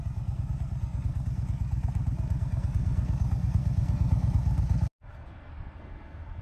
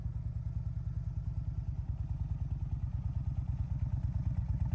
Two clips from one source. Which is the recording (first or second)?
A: second